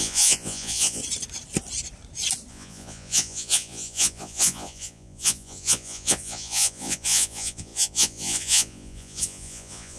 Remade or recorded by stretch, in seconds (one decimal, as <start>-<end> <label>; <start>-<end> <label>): 0.0-1.0 remade; 1.0-2.5 recorded; 2.5-10.0 remade